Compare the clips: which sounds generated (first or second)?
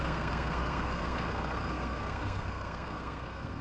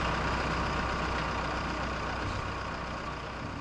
first